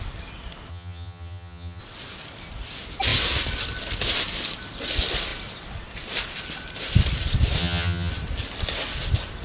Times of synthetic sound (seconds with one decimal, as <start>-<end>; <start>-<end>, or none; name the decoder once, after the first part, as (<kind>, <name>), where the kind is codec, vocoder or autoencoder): 0.7-1.8 (vocoder, HiFi-GAN); 7.6-8.1